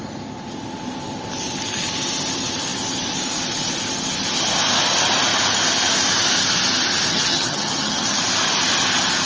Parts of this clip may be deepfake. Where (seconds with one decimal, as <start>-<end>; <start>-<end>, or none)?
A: 7.1-8.2